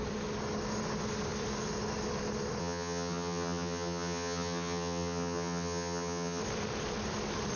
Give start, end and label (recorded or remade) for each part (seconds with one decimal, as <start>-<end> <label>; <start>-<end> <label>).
0.0-2.6 recorded; 2.6-6.4 remade; 6.4-7.6 recorded